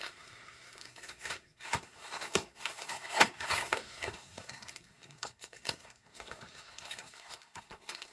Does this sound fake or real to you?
fake